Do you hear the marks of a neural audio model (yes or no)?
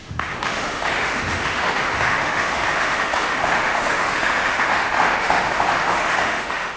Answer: yes